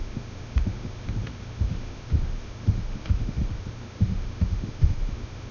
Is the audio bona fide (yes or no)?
no